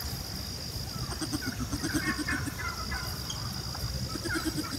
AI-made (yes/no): no